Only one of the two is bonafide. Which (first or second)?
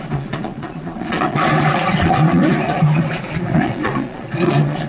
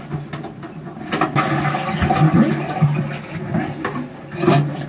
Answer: second